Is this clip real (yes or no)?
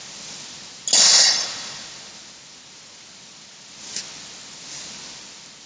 yes